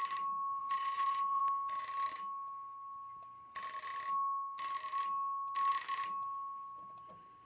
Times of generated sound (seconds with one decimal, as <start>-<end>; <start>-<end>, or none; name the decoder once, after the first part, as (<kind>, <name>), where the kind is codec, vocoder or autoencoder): 0.6-1.4 (vocoder, Vocos)